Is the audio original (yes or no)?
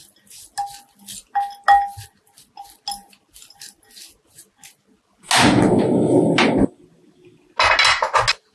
yes